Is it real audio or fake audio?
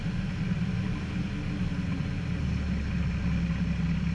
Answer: real